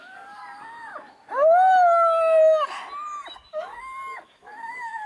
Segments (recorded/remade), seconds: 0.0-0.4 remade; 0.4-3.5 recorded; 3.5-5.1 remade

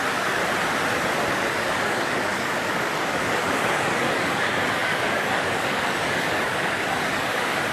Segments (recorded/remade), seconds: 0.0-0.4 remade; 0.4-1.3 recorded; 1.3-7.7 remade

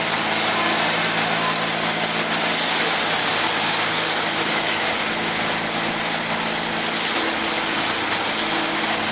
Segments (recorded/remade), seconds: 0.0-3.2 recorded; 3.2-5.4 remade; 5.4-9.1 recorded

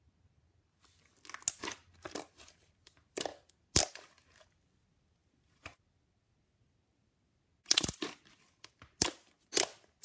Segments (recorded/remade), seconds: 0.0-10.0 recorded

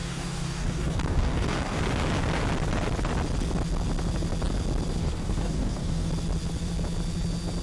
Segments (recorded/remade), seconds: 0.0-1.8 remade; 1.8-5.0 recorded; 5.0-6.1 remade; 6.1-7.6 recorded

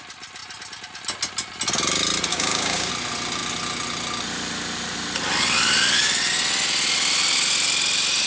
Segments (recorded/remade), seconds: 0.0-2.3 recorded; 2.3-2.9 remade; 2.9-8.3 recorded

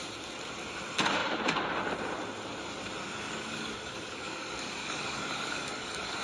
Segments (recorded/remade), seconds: 0.0-3.0 recorded; 3.0-6.2 remade

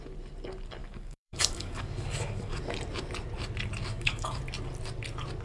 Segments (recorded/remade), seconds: 0.0-0.8 recorded; 0.8-2.6 remade; 2.6-3.9 recorded; 3.9-4.4 remade; 4.4-5.4 recorded